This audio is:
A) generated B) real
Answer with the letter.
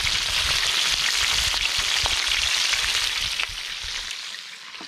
B